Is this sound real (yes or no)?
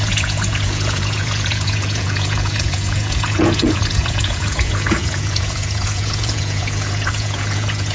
no